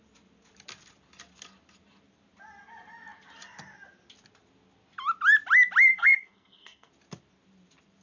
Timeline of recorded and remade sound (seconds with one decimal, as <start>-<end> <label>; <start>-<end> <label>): 0.0-5.9 recorded; 5.9-6.9 remade; 6.9-8.0 recorded